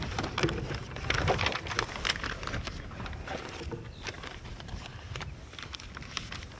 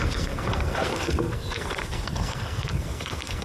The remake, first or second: second